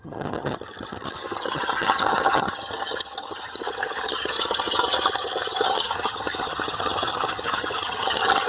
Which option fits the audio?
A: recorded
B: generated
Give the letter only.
B